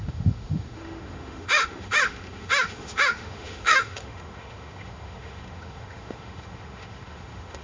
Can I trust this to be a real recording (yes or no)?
no